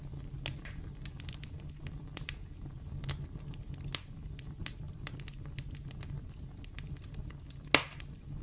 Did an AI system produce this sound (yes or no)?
no